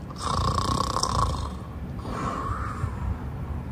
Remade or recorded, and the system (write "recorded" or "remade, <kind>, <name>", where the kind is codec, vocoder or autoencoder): recorded